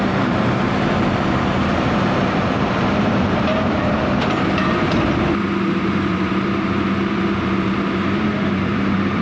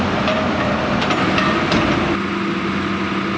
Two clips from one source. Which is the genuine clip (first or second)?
second